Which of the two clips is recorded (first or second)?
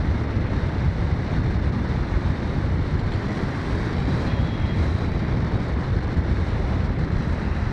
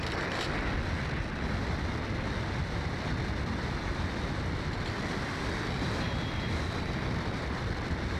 second